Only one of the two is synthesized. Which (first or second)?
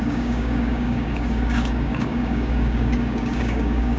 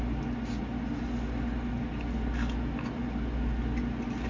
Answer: first